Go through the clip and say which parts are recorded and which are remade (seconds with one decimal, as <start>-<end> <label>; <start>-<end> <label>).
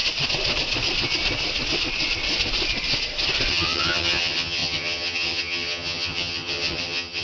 0.0-3.5 recorded; 3.5-7.2 remade